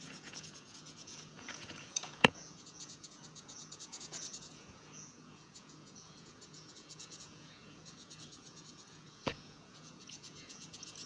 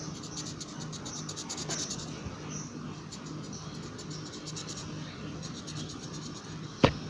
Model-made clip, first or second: first